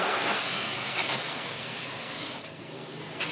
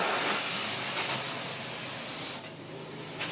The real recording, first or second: second